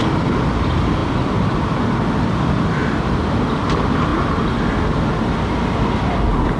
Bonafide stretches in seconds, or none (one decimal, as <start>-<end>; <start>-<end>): 0.0-6.6